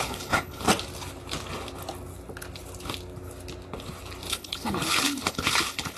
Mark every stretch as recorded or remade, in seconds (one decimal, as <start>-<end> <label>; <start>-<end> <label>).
0.0-0.7 remade; 0.7-4.3 recorded; 4.3-6.0 remade